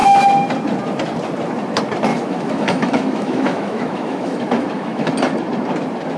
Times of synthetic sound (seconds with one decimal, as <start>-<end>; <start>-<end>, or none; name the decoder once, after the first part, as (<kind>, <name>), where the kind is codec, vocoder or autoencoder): 2.1-5.1 (autoencoder, DAC-VAE)